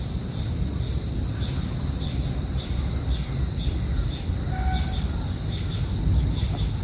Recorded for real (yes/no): yes